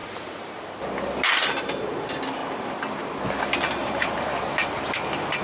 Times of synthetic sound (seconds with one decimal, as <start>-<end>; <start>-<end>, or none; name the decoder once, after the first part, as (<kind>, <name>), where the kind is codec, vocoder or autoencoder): 0.0-0.6 (vocoder, BigVGAN v2); 3.8-4.4